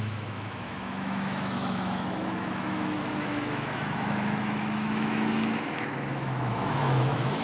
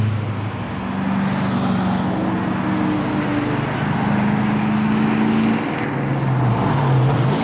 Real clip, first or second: second